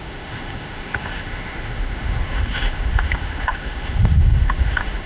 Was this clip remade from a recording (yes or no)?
yes